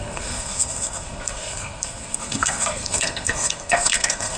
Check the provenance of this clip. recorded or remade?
remade